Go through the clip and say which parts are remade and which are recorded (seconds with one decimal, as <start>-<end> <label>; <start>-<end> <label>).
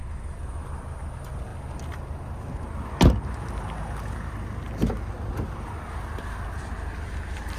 0.0-7.6 recorded